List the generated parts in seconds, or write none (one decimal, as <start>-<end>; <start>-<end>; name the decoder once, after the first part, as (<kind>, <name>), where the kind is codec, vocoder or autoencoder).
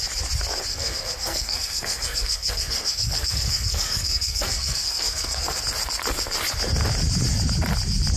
0.7-5.6 (codec, SNAC)